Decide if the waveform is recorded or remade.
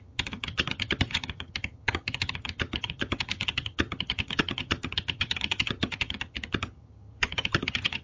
remade